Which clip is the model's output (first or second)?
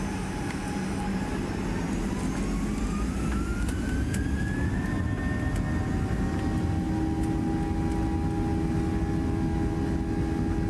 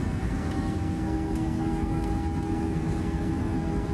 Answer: second